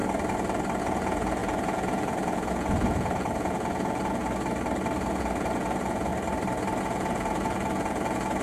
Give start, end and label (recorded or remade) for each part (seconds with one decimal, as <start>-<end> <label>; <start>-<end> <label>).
0.0-0.8 recorded; 0.8-4.2 remade; 4.2-5.1 recorded; 5.1-6.1 remade; 6.1-6.8 recorded; 6.8-8.4 remade